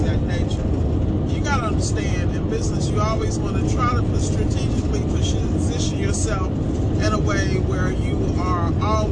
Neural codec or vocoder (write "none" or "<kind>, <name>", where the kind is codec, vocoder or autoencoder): none